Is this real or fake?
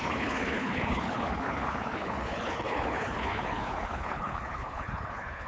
fake